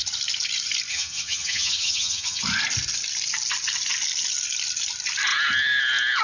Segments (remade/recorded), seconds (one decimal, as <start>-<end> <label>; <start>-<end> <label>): 0.0-0.9 recorded; 0.9-2.4 remade; 2.4-6.2 recorded